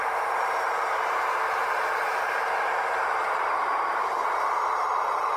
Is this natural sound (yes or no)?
no